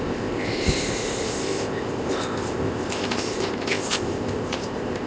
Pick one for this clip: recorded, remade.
remade